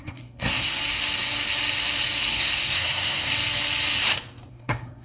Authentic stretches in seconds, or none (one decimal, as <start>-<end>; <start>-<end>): 0.8-2.3; 3.3-4.5